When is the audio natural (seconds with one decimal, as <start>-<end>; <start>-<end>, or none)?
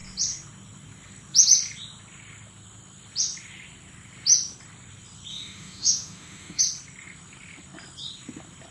0.0-5.3; 6.6-8.7